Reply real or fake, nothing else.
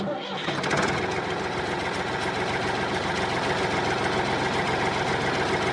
real